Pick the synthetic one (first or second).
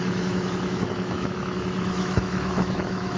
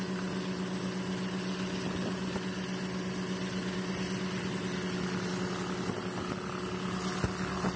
first